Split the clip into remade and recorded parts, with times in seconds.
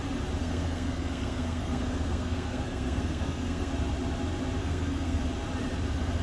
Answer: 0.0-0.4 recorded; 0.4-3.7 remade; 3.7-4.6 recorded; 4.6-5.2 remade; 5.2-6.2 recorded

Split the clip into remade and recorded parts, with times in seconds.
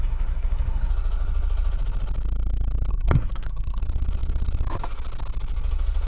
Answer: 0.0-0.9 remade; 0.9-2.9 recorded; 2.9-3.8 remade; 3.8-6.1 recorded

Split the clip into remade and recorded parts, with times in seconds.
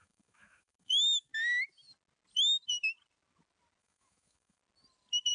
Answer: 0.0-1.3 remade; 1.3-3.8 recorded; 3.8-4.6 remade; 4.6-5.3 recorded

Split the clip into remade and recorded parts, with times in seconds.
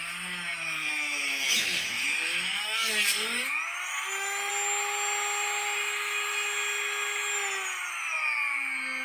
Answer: 0.0-0.9 recorded; 0.9-2.9 remade; 2.9-3.9 recorded; 3.9-4.5 remade; 4.5-9.0 recorded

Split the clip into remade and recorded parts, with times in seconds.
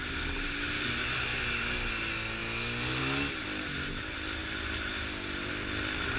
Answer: 0.0-6.2 recorded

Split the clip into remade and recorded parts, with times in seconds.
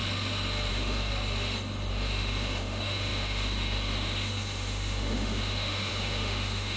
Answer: 0.0-0.7 recorded; 0.7-1.1 remade; 1.1-1.9 recorded; 1.9-6.8 remade